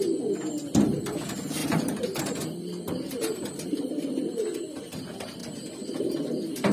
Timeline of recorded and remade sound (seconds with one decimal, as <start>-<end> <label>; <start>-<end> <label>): 0.0-1.6 recorded; 1.6-2.2 remade; 2.2-6.7 recorded